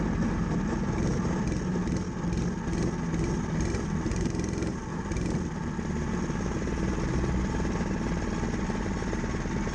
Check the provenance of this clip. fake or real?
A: real